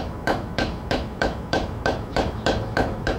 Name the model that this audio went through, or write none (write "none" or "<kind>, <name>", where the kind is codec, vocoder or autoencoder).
autoencoder, DAC-VAE